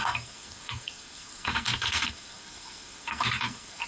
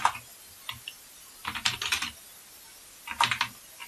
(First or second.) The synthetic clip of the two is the first